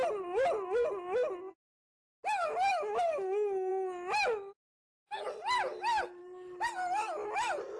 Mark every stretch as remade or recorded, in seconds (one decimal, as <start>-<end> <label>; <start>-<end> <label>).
0.0-7.2 recorded; 7.2-7.8 remade